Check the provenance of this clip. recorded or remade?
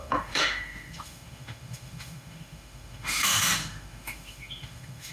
remade